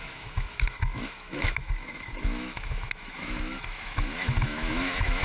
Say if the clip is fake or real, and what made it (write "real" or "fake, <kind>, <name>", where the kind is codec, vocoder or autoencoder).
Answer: fake, autoencoder, DAC-VAE